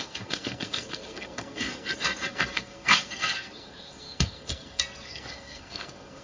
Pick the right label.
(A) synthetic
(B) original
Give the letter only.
A